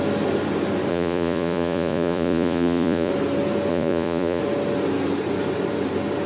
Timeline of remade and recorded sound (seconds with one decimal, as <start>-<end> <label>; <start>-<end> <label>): 0.0-0.9 recorded; 0.9-3.1 remade; 3.1-3.7 recorded; 3.7-4.4 remade; 4.4-6.3 recorded